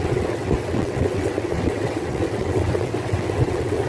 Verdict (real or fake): fake